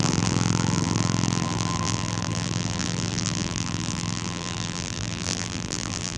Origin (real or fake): fake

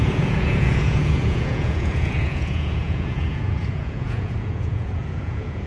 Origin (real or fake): fake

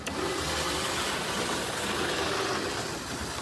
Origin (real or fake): real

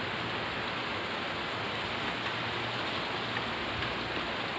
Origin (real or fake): real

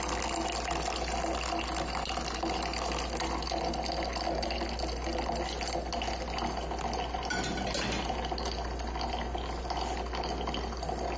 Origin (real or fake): real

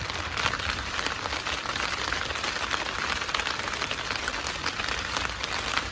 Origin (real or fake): real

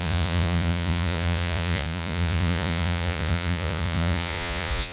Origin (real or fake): fake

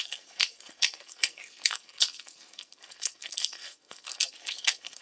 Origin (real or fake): fake